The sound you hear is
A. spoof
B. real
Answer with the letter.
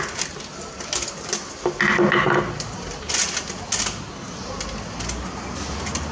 B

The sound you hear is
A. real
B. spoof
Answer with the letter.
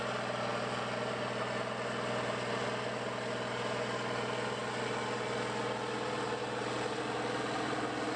A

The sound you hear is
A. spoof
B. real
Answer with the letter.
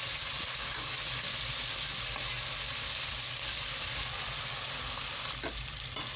B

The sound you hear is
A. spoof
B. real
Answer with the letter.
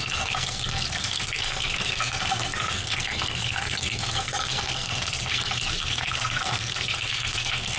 A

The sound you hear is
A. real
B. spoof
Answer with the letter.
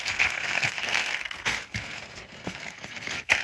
B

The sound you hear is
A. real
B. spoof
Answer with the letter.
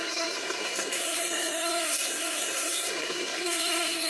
B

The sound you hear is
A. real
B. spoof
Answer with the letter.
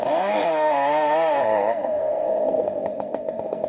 B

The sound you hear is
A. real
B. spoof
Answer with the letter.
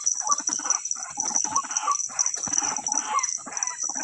A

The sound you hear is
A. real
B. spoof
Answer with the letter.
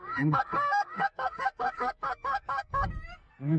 B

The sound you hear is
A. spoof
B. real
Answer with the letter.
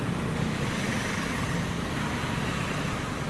B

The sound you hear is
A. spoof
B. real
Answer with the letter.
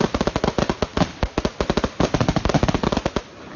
B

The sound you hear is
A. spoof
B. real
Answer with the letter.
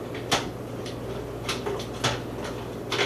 B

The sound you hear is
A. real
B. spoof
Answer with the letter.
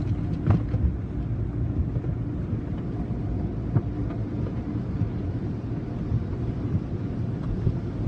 A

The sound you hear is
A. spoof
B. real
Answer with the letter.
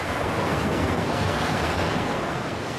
A